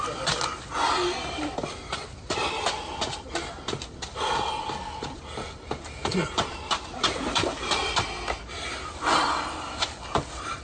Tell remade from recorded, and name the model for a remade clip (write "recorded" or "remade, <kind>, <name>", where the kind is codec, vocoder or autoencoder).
recorded